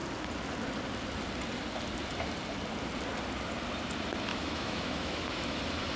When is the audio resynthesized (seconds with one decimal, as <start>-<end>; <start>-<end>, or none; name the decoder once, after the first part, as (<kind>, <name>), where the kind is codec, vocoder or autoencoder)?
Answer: 4.3-5.6 (autoencoder, DAC-VAE)